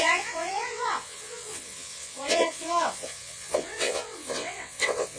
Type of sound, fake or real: fake